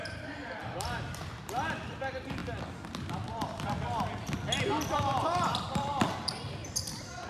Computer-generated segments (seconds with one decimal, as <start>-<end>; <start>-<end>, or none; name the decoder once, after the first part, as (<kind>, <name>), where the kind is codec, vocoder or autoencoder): 0.0-2.4 (vocoder, BigVGAN v2); 4.9-6.6